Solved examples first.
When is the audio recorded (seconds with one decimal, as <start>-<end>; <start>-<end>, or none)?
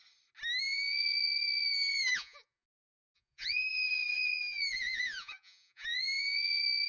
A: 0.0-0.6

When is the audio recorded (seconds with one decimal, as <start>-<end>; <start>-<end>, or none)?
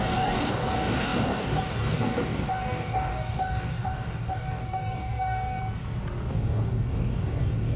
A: 5.6-6.3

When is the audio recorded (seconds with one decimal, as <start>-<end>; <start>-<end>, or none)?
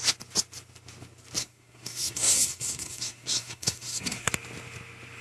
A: 0.0-1.4; 4.3-5.2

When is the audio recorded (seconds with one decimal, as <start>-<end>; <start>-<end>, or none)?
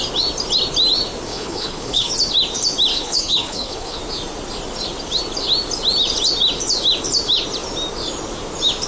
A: 0.0-1.3; 2.1-2.9; 4.0-8.9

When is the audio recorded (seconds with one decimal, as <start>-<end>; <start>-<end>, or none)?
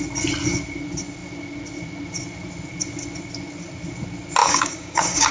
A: 0.0-4.4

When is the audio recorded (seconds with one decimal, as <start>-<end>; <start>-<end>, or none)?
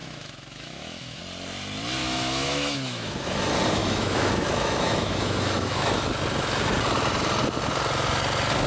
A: 1.2-2.0; 3.4-3.8; 6.1-8.7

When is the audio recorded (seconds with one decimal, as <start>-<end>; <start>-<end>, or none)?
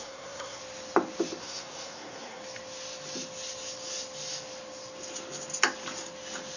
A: 0.6-1.4; 2.4-6.6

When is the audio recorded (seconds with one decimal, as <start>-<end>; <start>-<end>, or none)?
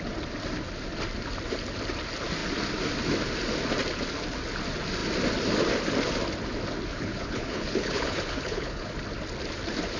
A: 0.0-6.9; 8.9-10.0